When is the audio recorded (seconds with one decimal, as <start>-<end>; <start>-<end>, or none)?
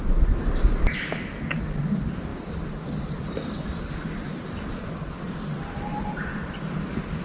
0.0-7.2